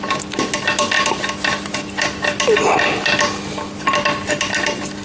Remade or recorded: recorded